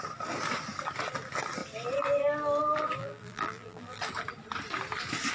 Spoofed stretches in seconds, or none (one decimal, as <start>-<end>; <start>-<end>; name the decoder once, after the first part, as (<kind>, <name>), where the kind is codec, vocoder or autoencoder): 3.0-4.0 (vocoder, BigVGAN v2)